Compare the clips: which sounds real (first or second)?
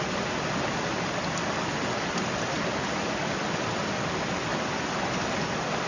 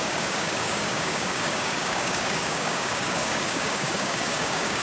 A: first